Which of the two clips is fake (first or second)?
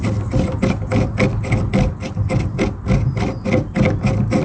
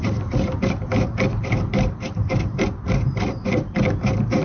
second